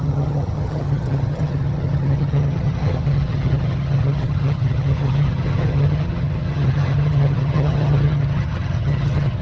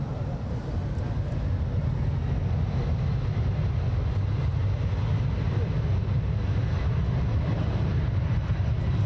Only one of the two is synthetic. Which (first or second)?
first